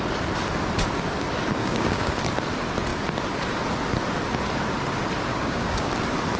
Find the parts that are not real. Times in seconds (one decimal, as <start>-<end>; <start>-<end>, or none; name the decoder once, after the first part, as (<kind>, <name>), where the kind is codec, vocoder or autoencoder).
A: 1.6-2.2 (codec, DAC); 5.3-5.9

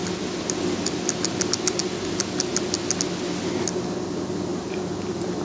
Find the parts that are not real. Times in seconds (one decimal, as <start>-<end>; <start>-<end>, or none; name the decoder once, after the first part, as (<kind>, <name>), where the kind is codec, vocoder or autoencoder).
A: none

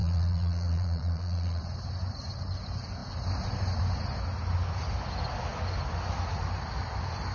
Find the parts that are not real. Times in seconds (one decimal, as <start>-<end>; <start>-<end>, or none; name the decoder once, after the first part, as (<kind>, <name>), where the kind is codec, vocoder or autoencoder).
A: 0.0-1.6 (vocoder, Vocos)